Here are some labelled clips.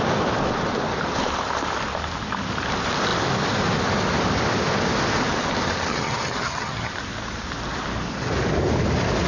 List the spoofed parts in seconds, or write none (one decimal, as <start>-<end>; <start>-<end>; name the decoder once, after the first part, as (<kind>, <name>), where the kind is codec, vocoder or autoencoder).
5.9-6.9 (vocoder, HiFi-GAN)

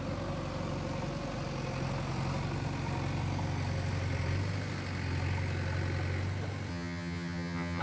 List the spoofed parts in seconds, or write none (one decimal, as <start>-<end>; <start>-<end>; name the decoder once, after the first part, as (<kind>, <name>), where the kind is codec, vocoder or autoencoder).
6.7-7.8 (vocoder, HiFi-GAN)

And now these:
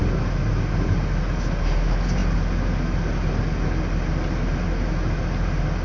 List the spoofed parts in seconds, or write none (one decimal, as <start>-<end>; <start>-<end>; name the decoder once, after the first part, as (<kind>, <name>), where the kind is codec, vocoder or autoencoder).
none

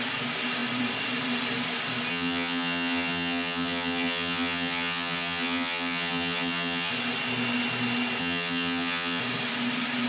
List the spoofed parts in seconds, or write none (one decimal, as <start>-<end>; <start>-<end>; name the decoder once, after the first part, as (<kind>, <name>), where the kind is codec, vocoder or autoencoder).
2.1-6.9 (vocoder, HiFi-GAN); 8.2-9.2

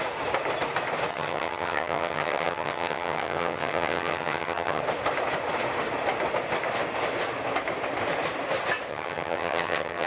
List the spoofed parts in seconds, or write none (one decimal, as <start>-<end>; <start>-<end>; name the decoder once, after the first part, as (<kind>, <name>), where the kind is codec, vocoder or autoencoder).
1.1-4.8 (vocoder, HiFi-GAN); 8.9-10.1